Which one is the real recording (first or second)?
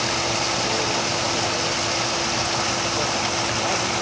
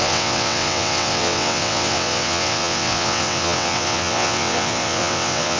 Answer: first